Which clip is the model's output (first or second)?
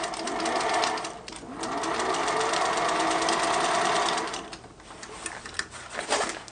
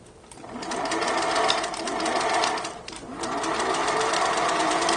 second